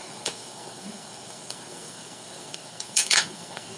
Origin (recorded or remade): remade